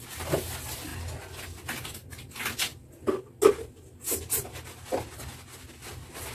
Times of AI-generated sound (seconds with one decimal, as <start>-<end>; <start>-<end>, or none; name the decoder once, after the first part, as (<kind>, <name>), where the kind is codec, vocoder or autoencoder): none